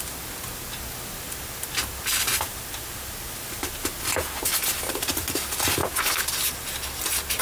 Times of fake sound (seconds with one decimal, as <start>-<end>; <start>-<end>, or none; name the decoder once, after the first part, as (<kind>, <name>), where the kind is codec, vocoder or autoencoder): none